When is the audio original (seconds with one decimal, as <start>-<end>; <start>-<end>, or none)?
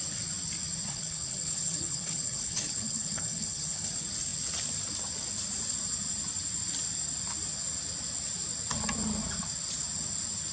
0.0-0.9; 3.9-10.5